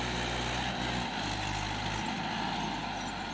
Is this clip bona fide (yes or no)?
yes